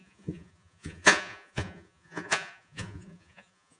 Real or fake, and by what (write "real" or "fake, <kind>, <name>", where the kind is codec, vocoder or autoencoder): fake, vocoder, Vocos